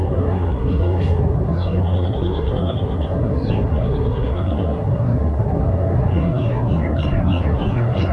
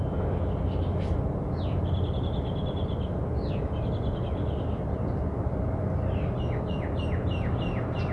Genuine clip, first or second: second